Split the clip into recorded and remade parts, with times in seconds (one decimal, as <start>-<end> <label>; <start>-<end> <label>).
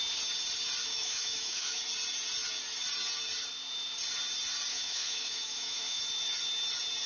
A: 0.0-0.8 recorded; 0.8-1.8 remade; 1.8-4.7 recorded; 4.7-6.0 remade; 6.0-7.1 recorded